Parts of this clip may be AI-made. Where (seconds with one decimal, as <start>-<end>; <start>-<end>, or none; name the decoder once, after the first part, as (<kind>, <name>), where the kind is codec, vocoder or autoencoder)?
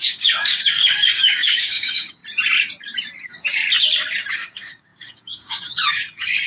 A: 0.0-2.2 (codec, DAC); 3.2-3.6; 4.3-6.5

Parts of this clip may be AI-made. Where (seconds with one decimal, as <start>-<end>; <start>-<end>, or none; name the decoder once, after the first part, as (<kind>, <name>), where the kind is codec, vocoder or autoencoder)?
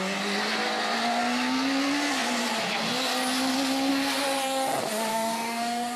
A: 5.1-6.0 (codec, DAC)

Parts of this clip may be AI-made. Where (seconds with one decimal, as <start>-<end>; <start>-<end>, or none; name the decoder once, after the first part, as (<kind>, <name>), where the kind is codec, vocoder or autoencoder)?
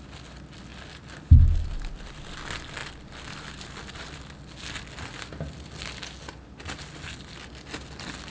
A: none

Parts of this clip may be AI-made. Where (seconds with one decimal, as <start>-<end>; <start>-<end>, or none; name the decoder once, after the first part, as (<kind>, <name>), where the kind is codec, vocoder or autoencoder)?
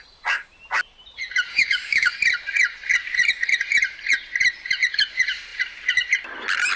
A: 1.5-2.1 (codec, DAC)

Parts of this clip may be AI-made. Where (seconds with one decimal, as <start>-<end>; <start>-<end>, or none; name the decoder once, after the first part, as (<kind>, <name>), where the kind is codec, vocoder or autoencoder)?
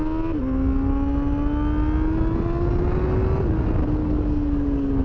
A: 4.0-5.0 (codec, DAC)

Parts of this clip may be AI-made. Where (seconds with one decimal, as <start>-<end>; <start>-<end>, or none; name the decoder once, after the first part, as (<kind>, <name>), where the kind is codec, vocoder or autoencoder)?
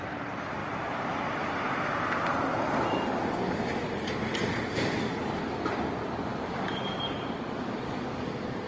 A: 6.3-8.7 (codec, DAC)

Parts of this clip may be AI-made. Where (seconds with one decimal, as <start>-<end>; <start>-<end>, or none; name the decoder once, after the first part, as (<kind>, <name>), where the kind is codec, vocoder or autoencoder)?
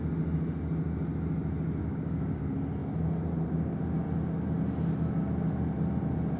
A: 1.8-2.4 (codec, DAC)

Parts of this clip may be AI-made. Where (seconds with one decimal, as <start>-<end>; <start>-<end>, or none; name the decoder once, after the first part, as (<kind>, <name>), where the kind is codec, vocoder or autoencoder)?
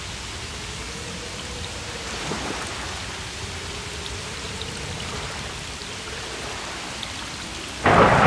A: 0.5-1.1 (codec, DAC)